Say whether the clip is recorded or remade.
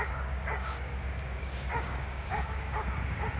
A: remade